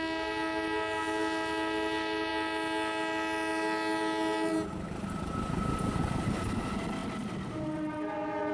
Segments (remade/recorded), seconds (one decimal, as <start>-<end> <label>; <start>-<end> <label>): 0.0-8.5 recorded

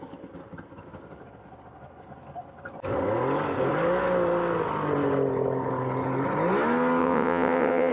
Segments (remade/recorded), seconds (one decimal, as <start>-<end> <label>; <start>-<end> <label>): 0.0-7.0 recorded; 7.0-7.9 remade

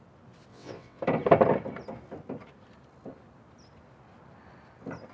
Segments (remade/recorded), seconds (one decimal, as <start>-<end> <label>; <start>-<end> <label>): 0.0-0.5 recorded; 0.5-1.0 remade; 1.0-5.1 recorded